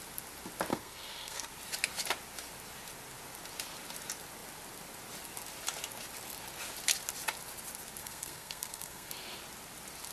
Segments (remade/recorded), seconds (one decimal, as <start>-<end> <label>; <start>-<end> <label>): 0.0-0.7 recorded; 0.7-1.5 remade; 1.5-8.0 recorded; 8.0-9.1 remade; 9.1-10.1 recorded

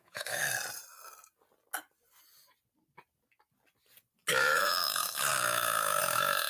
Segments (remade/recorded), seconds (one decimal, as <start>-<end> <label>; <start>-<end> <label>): 0.0-0.4 remade; 0.4-4.3 recorded; 4.3-6.5 remade

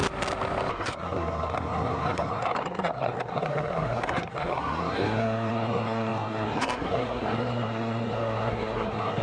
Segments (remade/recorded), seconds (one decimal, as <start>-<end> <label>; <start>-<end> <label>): 0.0-0.7 recorded; 0.7-9.2 remade